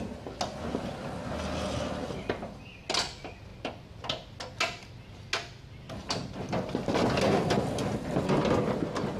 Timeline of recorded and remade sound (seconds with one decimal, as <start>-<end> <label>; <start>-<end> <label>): 0.0-9.2 recorded